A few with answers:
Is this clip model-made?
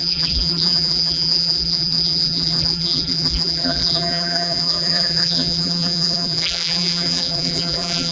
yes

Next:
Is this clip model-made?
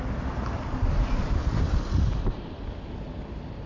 no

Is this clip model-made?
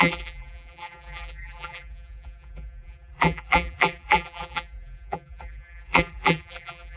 yes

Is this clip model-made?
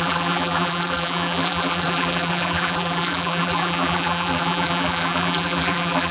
yes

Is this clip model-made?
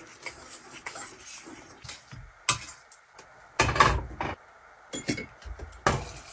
no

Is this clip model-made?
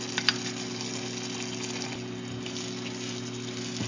no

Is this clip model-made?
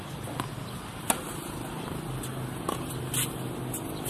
no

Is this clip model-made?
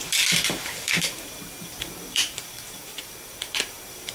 yes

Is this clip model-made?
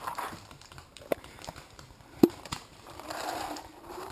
yes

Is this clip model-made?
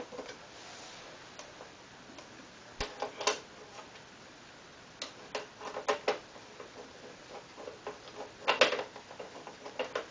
no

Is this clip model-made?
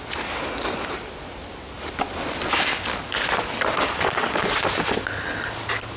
no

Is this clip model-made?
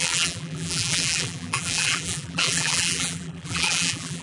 yes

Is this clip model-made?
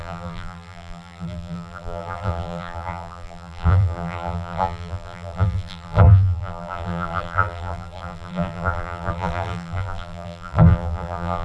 yes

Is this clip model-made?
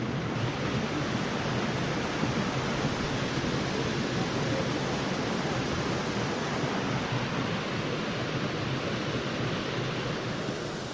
no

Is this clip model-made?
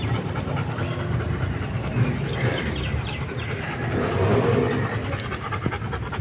no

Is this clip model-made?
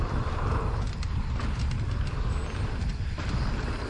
no